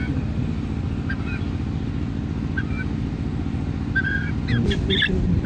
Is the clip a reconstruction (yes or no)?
no